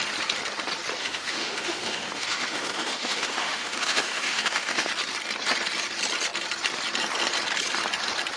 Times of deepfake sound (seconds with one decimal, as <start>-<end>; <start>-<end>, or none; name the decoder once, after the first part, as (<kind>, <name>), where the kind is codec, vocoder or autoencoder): 1.0-4.9 (autoencoder, DAC-VAE)